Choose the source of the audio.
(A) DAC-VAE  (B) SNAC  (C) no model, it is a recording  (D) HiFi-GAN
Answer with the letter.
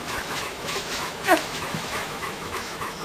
A